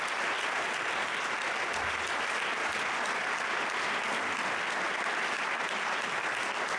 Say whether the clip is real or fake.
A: real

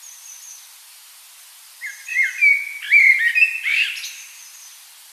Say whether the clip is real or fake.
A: real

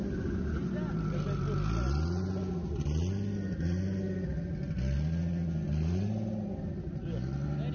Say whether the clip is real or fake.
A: real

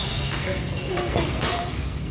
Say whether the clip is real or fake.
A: fake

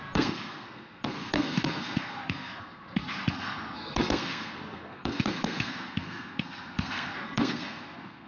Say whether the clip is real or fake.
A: fake